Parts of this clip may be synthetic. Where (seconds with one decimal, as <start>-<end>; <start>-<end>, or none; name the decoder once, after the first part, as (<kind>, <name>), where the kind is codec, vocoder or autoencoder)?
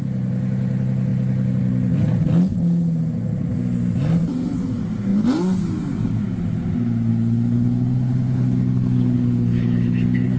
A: 7.1-10.4 (codec, HILCodec)